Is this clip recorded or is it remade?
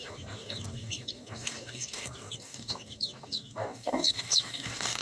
remade